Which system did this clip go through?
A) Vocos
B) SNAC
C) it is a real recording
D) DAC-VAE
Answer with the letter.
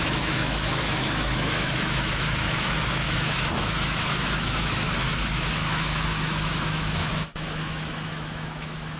D